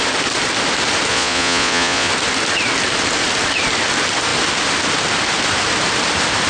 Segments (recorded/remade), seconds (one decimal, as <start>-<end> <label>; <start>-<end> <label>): 0.0-1.1 recorded; 1.1-2.1 remade; 2.1-6.5 recorded